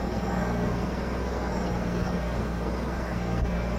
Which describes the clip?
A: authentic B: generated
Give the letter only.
B